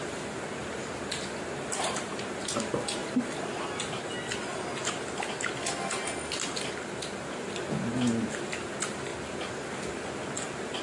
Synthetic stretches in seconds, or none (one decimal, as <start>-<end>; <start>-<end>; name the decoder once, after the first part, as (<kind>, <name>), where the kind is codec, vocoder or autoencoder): 0.6-2.3 (vocoder, BigVGAN v2)